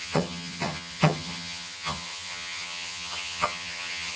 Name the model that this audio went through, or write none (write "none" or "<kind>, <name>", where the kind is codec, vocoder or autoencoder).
vocoder, HiFi-GAN